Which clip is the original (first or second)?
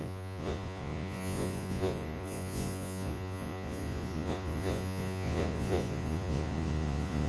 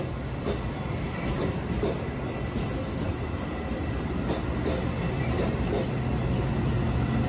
second